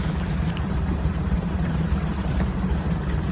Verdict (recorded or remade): remade